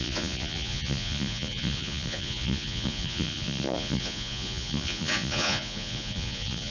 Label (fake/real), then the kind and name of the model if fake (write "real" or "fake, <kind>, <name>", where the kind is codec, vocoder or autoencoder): fake, vocoder, Vocos